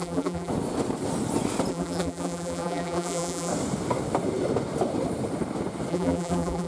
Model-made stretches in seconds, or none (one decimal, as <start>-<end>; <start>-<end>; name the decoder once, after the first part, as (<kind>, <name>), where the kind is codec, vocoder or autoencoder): 0.0-0.5 (vocoder, BigVGAN v2); 1.7-3.5; 5.9-6.7